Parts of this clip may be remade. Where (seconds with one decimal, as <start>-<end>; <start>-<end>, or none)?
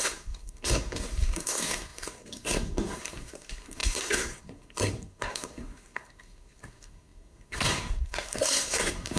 0.0-9.2